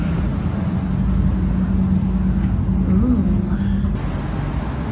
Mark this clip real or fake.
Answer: real